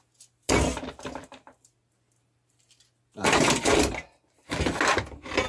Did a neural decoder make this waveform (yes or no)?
no